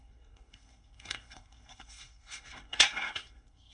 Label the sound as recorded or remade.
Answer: remade